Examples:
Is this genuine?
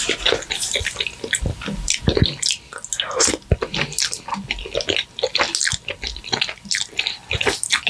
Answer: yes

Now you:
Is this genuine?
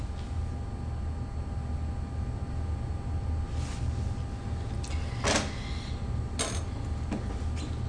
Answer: yes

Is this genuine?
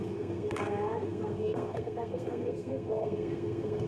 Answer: no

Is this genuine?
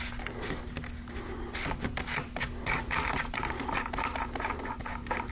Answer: yes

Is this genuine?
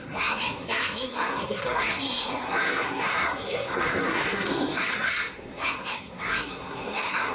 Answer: no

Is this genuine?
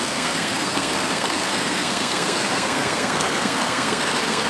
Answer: no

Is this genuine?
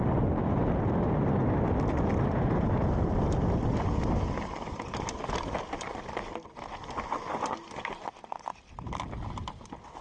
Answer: yes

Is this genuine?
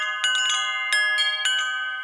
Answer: yes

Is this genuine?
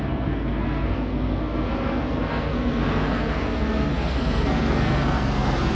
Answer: no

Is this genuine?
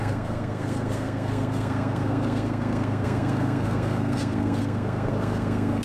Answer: no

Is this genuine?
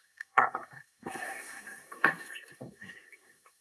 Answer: no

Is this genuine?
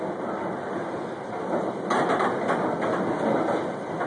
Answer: yes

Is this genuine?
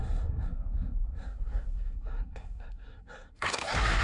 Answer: no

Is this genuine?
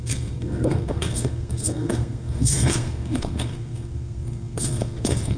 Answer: no